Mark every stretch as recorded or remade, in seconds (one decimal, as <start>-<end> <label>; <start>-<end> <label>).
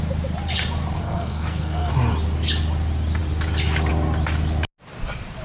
0.0-1.0 recorded; 1.0-1.9 remade; 1.9-5.4 recorded